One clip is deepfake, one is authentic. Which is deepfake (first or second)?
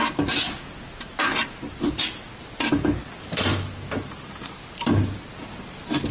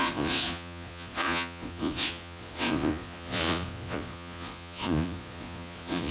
second